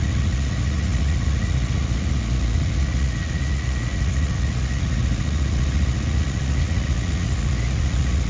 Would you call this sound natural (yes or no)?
no